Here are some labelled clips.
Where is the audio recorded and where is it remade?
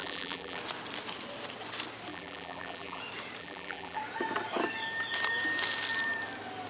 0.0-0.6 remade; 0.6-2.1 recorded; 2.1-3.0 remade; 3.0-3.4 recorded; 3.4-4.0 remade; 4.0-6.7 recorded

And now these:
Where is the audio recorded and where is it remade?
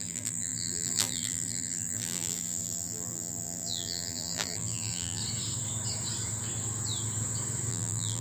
0.0-5.2 remade; 5.2-7.7 recorded; 7.7-8.2 remade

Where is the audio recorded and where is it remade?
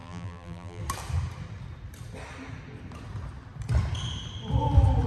0.0-0.8 remade; 0.8-5.1 recorded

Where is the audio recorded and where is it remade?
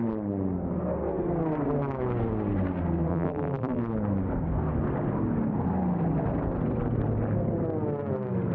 0.0-3.1 recorded; 3.1-3.8 remade; 3.8-8.5 recorded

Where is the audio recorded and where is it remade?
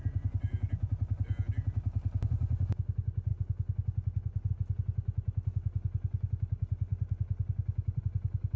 0.0-3.3 recorded; 3.3-4.5 remade; 4.5-6.9 recorded; 6.9-8.0 remade; 8.0-8.6 recorded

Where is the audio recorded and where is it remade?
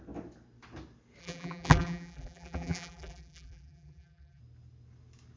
0.0-1.2 recorded; 1.2-4.4 remade; 4.4-5.4 recorded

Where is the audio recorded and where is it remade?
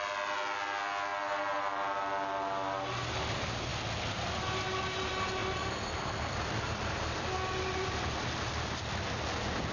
0.0-1.1 recorded; 1.1-2.0 remade; 2.0-5.4 recorded; 5.4-8.8 remade; 8.8-9.7 recorded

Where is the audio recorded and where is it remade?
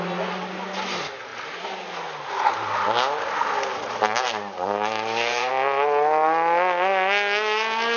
0.0-3.7 recorded; 3.7-5.5 remade; 5.5-8.0 recorded